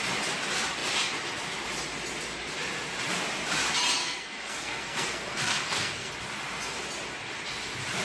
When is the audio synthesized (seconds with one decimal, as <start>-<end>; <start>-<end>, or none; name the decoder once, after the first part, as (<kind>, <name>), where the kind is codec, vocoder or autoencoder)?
4.0-6.1 (codec, SNAC)